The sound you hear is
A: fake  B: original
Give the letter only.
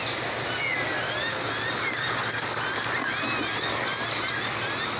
B